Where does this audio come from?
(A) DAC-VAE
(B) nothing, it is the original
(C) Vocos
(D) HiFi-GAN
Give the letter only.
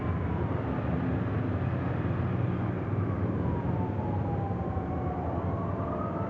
B